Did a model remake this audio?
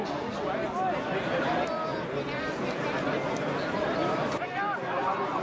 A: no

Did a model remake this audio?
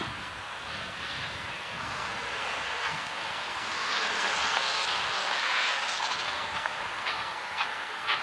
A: yes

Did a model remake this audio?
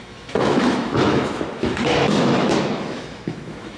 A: yes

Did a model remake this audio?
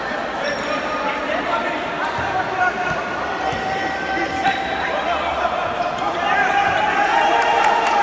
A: yes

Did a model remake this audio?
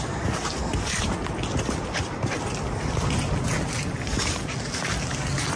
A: no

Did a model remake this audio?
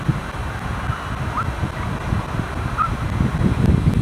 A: no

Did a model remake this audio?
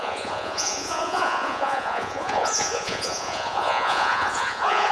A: yes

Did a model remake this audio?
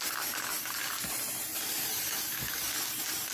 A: no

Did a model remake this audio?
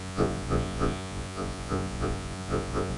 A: yes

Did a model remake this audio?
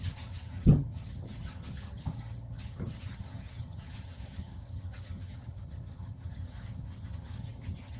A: yes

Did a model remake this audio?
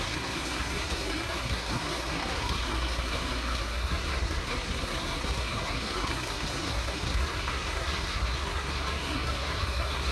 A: yes